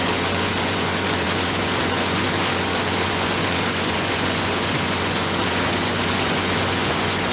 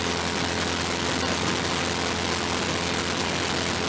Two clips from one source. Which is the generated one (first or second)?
first